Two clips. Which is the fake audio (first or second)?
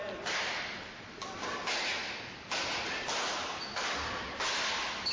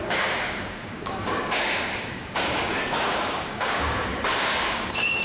second